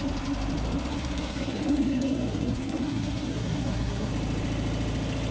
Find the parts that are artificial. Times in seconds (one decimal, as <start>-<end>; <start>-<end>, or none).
0.9-4.1